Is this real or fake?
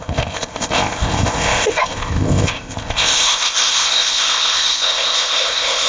fake